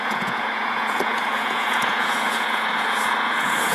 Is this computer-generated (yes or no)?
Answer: yes